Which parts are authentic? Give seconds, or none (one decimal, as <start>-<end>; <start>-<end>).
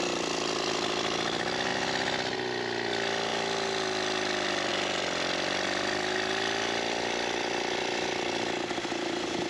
0.0-9.5